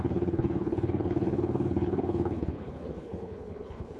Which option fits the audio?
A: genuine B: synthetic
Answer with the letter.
B